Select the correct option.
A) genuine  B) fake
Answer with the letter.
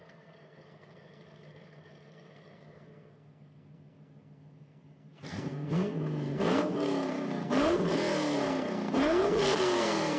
B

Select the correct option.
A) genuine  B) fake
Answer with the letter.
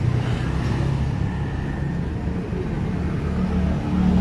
A